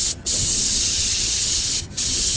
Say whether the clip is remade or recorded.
remade